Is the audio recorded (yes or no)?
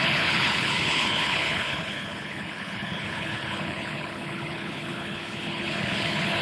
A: no